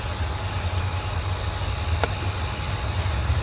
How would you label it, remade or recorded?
recorded